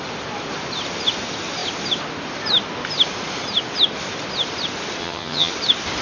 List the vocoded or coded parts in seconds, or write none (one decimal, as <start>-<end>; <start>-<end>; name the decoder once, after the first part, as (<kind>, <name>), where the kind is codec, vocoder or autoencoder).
5.0-5.5 (vocoder, HiFi-GAN)